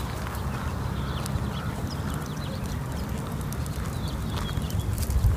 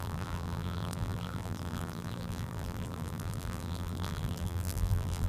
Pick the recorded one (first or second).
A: first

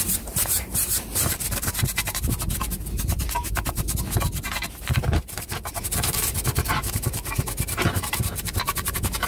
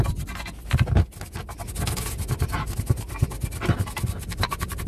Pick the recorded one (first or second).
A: second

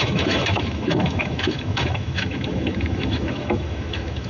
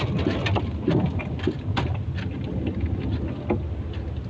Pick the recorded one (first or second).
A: second